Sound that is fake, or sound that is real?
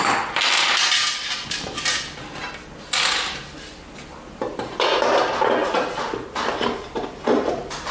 real